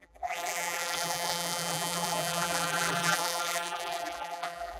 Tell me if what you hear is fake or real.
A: fake